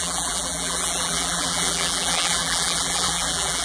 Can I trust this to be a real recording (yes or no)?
no